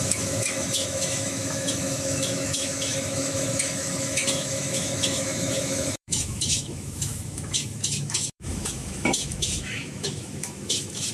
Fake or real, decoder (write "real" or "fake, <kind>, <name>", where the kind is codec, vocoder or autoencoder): fake, autoencoder, DAC-VAE